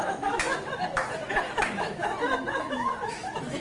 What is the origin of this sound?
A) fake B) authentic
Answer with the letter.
A